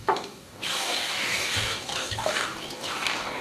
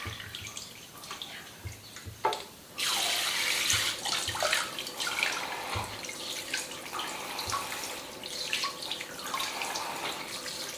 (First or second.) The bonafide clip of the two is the second